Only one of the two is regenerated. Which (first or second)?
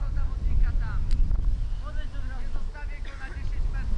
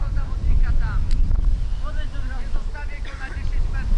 second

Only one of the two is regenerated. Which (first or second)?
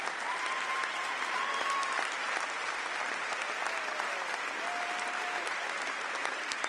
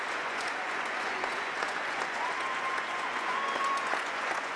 second